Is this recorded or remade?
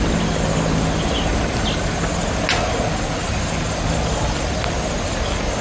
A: recorded